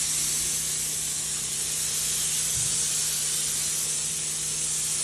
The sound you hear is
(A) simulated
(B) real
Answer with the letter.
B